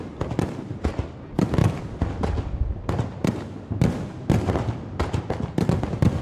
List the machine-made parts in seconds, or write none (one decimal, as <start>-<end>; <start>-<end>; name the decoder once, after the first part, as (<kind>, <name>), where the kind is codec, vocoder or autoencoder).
none